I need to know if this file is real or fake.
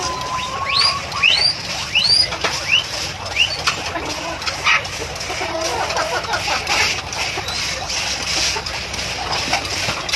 real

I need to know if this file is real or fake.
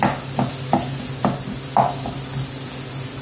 real